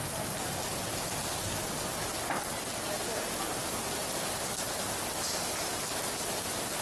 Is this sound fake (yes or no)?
no